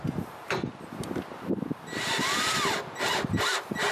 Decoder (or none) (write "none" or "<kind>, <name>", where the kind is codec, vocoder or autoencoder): none